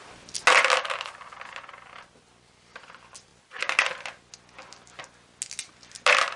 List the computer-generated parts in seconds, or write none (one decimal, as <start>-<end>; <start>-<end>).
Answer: none